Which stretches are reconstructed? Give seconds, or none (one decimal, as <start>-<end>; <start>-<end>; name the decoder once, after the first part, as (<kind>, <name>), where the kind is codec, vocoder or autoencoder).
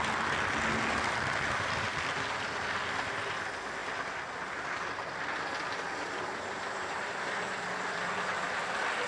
none